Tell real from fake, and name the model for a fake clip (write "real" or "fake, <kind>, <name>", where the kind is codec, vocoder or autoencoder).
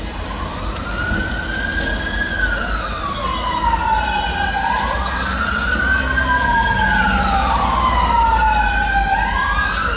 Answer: real